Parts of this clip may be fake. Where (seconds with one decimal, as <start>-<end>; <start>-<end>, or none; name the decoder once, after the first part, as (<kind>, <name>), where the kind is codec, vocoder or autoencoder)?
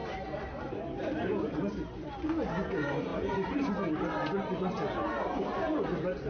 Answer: 3.1-3.7 (vocoder, BigVGAN v2)